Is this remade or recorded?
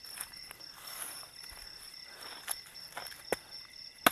recorded